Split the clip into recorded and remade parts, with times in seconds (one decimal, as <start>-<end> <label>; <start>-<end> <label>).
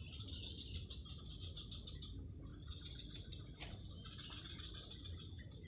0.0-2.5 recorded; 2.5-3.9 remade; 3.9-5.7 recorded